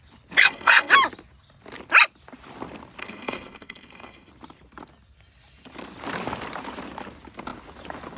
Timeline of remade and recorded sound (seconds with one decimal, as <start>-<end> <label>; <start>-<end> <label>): 0.0-0.4 recorded; 0.4-0.9 remade; 0.9-3.0 recorded; 3.0-4.3 remade; 4.3-8.2 recorded